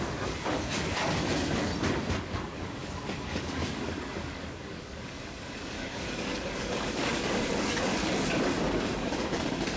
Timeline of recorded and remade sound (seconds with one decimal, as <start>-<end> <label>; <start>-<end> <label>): 0.0-1.7 remade; 1.7-2.2 recorded; 2.2-9.8 remade